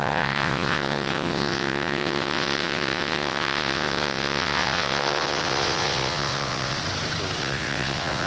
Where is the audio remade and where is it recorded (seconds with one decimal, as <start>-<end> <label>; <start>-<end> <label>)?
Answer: 0.0-6.8 remade; 6.8-7.4 recorded; 7.4-8.3 remade